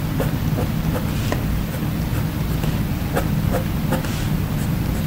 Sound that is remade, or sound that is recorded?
recorded